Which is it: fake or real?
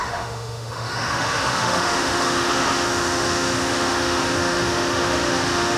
fake